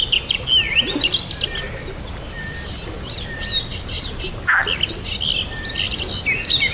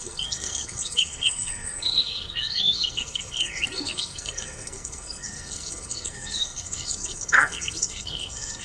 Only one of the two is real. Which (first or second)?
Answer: first